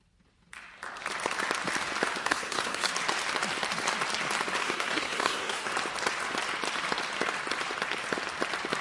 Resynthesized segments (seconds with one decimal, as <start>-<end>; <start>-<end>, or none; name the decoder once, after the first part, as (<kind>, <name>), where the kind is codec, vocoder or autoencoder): 2.2-2.9 (codec, SNAC); 4.6-5.7